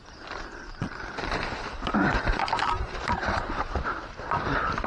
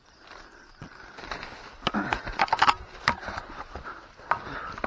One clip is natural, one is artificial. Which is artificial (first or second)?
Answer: first